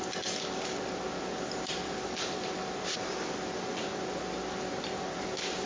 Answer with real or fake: real